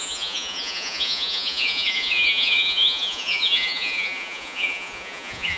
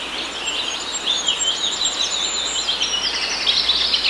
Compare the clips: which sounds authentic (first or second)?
second